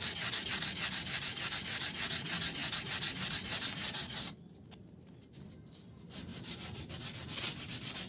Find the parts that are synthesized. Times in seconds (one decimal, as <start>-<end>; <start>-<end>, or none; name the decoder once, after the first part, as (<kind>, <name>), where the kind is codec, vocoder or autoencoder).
2.6-3.3 (vocoder, BigVGAN v2); 6.3-6.9